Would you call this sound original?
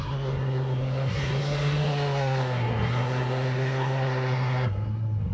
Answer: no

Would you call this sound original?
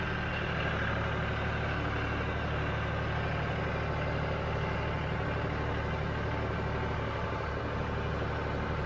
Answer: yes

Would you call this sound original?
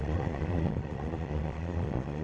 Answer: no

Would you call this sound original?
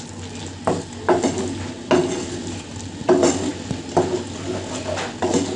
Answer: yes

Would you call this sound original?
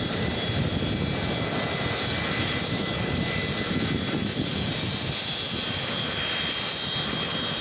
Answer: yes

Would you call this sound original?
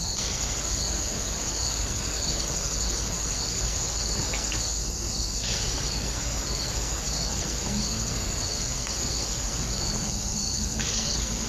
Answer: no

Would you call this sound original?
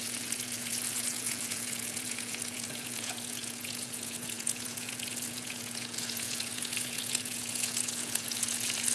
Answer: no